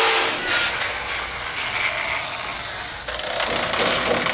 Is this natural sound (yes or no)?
yes